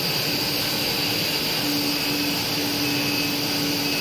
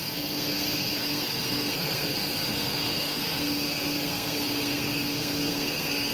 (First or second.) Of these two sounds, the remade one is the second